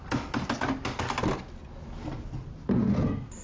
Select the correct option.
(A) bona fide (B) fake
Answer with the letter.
A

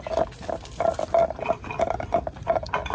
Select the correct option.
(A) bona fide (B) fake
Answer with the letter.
A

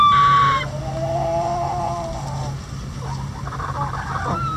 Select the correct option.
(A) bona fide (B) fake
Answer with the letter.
A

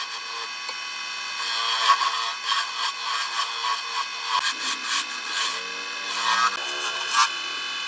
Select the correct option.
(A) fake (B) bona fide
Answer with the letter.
B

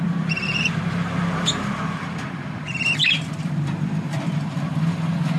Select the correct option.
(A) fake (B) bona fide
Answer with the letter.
A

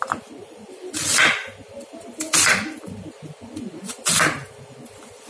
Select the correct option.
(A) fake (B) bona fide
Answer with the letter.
B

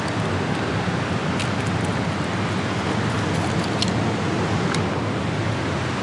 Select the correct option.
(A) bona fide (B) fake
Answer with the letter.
A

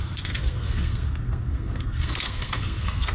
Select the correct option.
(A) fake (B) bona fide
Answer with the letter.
A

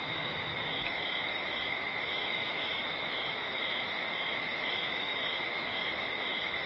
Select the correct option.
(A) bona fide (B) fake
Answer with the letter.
B